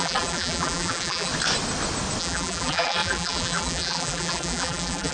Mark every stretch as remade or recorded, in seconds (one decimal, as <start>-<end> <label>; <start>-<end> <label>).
0.0-1.3 remade; 1.3-2.2 recorded; 2.2-5.1 remade